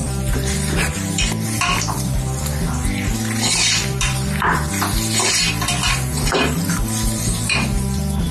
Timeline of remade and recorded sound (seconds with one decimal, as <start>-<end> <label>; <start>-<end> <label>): 0.0-8.3 recorded